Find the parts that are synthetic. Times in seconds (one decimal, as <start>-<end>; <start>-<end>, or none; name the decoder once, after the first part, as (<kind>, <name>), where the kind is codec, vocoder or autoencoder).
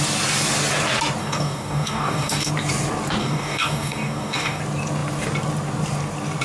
1.2-2.5 (codec, DAC); 3.2-4.6